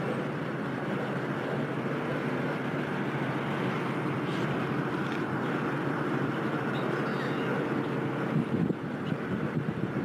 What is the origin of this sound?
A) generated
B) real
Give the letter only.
B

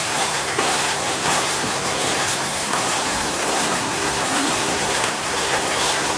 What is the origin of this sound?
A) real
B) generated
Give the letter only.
B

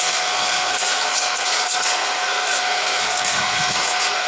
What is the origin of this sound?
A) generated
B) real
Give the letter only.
A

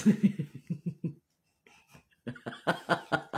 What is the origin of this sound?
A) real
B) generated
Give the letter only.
A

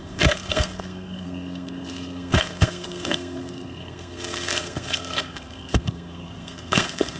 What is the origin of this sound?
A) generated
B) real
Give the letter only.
A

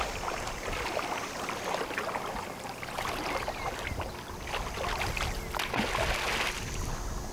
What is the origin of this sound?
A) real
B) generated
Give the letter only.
A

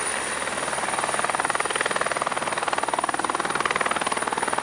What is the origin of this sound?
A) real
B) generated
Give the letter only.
A